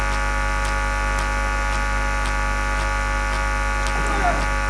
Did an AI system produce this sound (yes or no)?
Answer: no